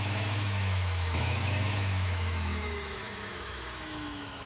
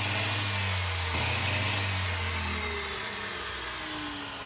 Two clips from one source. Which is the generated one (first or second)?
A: first